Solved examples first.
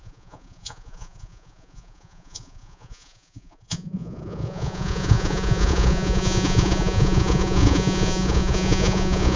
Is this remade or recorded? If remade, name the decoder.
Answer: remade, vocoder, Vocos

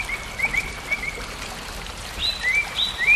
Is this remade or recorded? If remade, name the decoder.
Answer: recorded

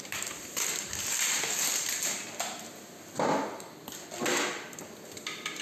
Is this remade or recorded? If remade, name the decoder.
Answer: recorded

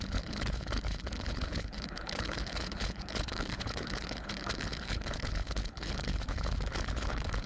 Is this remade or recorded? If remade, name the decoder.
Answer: remade, codec, HILCodec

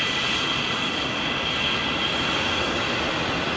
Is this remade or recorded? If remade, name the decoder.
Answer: recorded